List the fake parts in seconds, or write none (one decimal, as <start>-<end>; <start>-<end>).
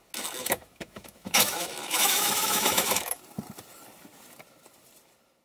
0.4-3.2